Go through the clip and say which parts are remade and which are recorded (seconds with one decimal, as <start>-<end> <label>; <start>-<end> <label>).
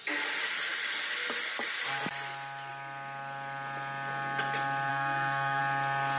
0.0-4.9 recorded; 4.9-5.6 remade; 5.6-6.2 recorded